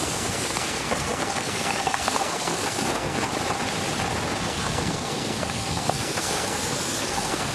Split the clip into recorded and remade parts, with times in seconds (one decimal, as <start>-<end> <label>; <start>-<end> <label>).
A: 0.0-3.3 remade; 3.3-4.4 recorded; 4.4-7.5 remade